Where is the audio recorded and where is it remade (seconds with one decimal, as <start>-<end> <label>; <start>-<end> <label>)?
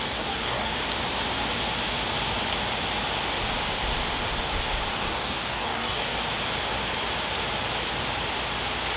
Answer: 0.0-0.7 remade; 0.7-4.9 recorded; 4.9-6.1 remade; 6.1-9.0 recorded